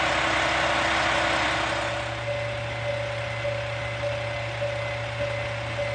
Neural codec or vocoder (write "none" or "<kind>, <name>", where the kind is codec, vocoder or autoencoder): none